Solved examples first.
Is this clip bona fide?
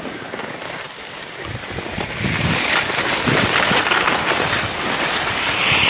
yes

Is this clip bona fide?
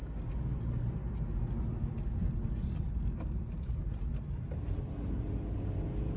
yes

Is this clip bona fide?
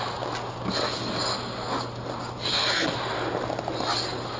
yes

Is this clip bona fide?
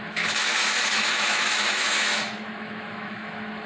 no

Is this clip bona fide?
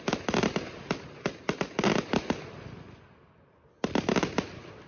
yes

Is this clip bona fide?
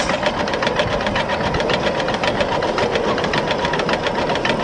yes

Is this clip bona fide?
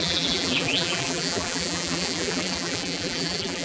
no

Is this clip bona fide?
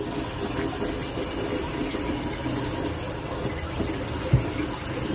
yes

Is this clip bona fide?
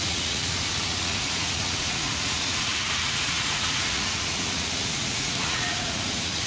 no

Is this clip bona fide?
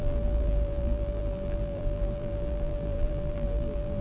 no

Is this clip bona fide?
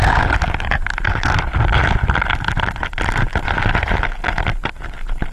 yes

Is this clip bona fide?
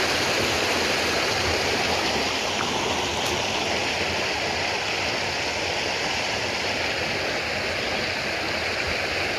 yes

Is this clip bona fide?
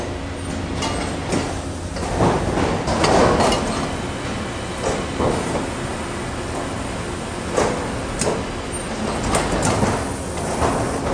yes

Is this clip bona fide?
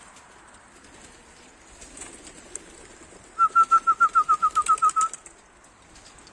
yes